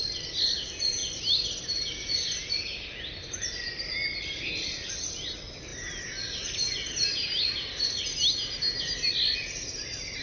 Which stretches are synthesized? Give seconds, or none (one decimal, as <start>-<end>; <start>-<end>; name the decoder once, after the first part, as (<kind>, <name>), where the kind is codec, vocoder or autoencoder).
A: none